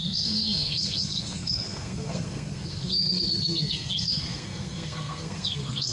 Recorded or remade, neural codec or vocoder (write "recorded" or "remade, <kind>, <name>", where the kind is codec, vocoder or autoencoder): remade, codec, SNAC